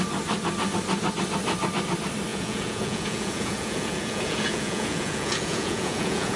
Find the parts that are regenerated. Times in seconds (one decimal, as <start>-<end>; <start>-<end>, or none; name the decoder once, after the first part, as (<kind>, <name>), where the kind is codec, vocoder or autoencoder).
2.3-6.4 (vocoder, Vocos)